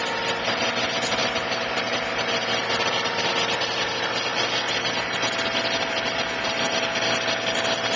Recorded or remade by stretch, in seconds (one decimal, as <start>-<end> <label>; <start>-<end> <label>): 0.0-8.0 recorded